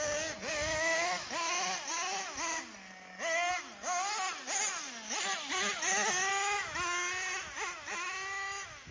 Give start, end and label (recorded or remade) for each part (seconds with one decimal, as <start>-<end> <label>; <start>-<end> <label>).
0.0-0.5 recorded; 0.5-1.3 remade; 1.3-8.9 recorded